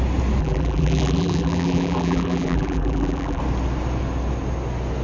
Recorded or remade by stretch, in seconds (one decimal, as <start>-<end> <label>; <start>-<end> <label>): 0.0-0.4 recorded; 0.4-3.4 remade; 3.4-5.0 recorded